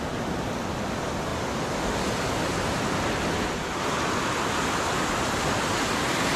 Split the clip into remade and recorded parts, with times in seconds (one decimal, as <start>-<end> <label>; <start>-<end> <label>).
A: 0.0-6.4 recorded